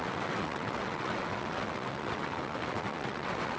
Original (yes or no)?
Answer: no